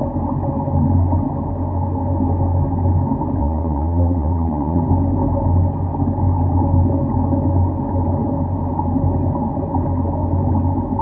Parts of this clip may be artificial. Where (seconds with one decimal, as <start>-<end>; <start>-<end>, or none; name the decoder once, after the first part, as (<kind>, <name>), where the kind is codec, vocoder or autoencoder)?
3.4-4.8 (vocoder, Vocos)